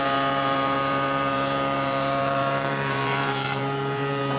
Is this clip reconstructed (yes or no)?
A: yes